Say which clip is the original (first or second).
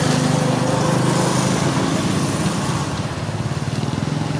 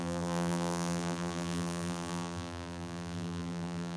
first